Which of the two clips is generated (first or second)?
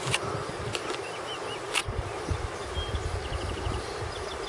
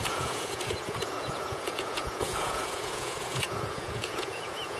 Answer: second